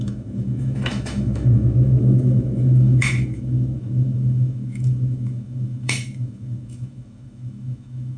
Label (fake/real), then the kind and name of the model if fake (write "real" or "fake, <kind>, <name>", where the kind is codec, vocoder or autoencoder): fake, autoencoder, DAC-VAE